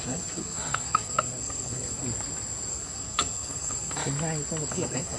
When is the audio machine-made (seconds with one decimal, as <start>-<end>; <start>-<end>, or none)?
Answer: 0.0-2.0; 2.7-4.0; 4.7-5.2